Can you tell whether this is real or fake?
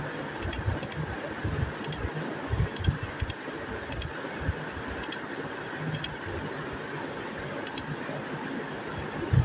real